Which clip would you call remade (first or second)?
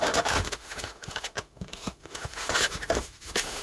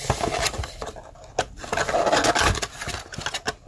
first